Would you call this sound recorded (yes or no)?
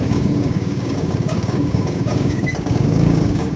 no